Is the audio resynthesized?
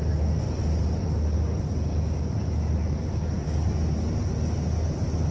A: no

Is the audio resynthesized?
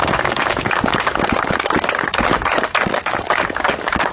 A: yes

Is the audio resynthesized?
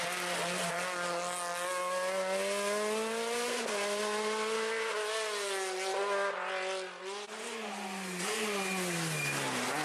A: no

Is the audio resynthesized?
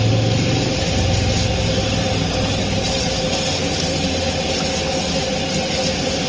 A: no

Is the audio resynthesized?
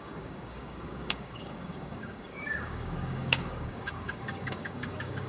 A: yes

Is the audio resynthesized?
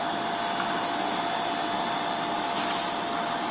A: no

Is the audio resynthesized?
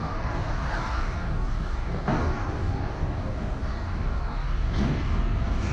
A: yes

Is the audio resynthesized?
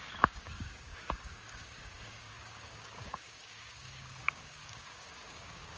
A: yes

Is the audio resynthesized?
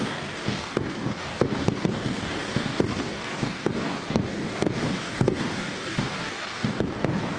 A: yes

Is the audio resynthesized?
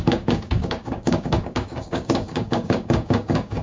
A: yes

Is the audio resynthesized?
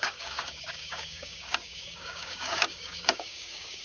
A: yes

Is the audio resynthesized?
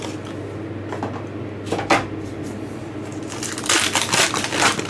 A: no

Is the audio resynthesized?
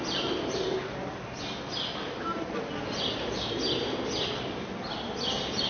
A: no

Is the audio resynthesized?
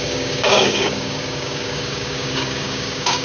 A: yes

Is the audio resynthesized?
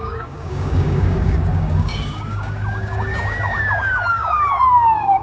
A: yes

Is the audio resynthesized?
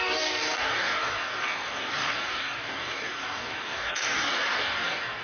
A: yes